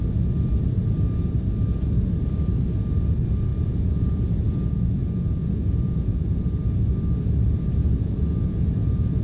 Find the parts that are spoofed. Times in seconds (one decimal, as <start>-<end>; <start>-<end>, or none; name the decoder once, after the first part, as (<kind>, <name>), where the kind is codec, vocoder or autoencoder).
3.5-6.9 (vocoder, Vocos); 7.8-9.2